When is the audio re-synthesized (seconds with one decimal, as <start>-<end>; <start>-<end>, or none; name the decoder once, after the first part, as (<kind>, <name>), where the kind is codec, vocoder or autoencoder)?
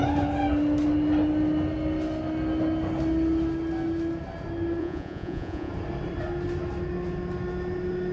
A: 4.8-5.7 (vocoder, Vocos)